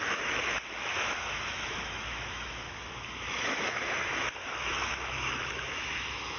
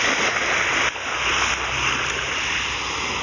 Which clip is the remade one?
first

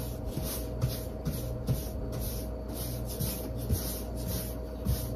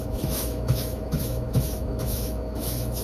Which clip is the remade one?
second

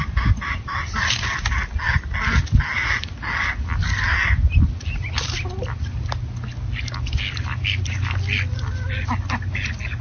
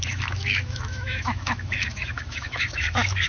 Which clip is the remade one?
second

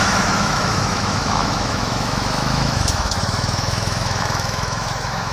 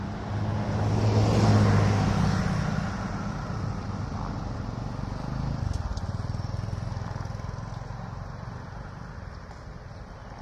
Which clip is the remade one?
first